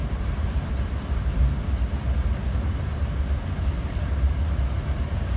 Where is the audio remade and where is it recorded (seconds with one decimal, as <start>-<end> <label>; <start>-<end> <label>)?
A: 0.0-1.5 remade; 1.5-2.4 recorded; 2.4-5.4 remade